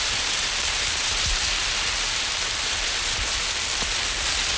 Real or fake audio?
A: fake